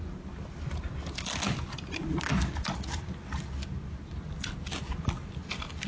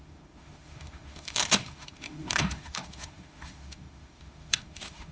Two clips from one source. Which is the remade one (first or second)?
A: second